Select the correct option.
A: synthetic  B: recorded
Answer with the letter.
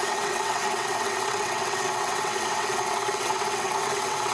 A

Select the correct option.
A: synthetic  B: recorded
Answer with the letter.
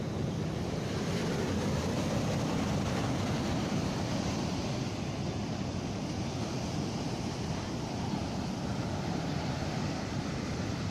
A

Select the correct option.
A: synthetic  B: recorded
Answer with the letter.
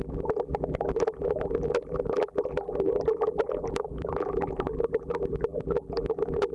A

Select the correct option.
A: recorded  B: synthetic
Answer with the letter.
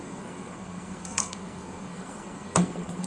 B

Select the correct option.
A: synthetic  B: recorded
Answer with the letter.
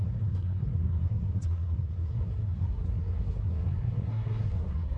A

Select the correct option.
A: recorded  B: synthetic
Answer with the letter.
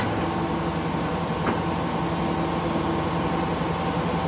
A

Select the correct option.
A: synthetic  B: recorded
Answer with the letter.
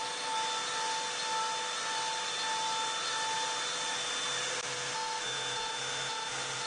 B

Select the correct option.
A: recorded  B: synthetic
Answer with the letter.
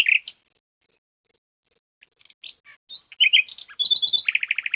A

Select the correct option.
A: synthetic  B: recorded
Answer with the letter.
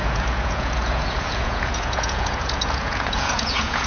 A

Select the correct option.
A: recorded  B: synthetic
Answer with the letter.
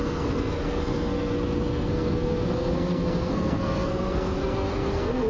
B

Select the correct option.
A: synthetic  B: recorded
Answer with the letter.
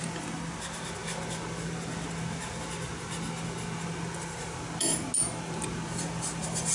B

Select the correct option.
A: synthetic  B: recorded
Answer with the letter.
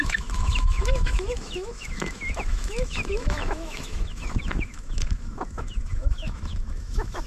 A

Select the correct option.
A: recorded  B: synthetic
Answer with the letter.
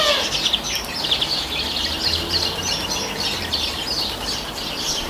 A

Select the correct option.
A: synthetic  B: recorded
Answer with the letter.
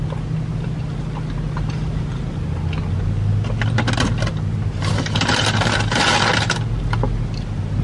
B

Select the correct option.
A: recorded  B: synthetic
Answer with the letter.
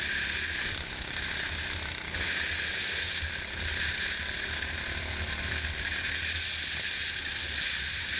A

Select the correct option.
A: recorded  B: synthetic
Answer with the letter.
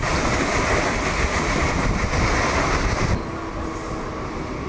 A